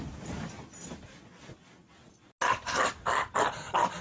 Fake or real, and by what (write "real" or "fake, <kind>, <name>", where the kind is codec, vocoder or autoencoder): real